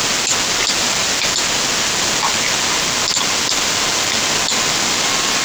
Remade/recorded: recorded